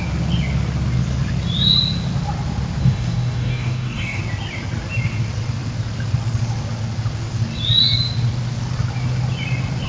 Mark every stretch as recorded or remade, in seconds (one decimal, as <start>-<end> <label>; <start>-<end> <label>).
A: 0.0-2.8 recorded; 2.8-4.2 remade; 4.2-9.9 recorded

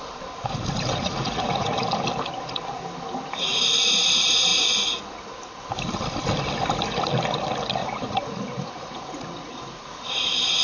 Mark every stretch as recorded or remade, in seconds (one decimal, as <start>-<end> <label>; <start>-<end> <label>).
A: 0.0-0.9 recorded; 0.9-1.8 remade; 1.8-7.8 recorded; 7.8-10.0 remade; 10.0-10.6 recorded

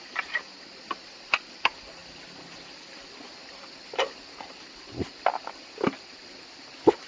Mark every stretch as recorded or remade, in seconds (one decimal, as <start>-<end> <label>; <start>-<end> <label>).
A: 0.0-7.1 recorded

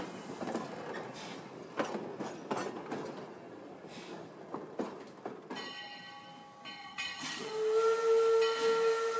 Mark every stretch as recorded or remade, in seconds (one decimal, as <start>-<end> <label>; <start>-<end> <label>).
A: 0.0-6.8 recorded; 6.8-7.5 remade; 7.5-9.2 recorded

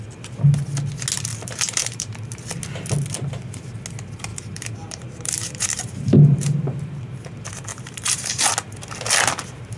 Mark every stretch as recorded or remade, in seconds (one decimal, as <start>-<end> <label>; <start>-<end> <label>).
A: 0.0-1.3 recorded; 1.3-2.5 remade; 2.5-4.3 recorded; 4.3-7.3 remade; 7.3-7.7 recorded; 7.7-8.4 remade; 8.4-9.8 recorded

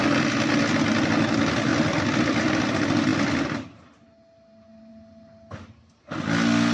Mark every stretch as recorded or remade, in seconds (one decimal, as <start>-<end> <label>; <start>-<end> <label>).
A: 0.0-6.7 recorded